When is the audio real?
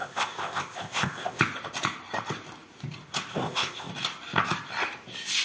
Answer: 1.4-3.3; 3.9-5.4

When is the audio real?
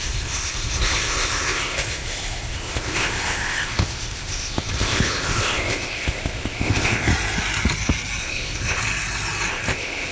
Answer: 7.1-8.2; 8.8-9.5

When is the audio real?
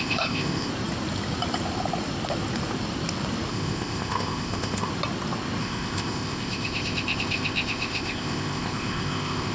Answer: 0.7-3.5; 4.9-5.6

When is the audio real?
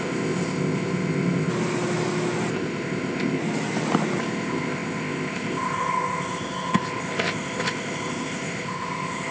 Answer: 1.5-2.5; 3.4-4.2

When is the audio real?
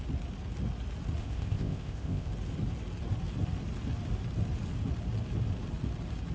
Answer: 0.0-1.2; 2.3-6.3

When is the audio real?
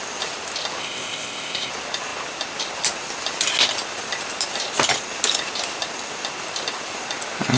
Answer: 0.0-0.8; 1.7-7.6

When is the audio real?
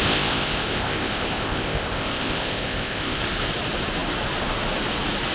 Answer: 3.2-5.3